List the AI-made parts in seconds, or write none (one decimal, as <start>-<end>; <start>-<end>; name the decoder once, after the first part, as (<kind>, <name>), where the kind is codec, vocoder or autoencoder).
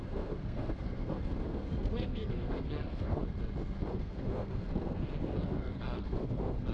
0.0-3.2 (codec, SNAC); 3.9-6.7